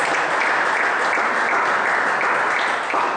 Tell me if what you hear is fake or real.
real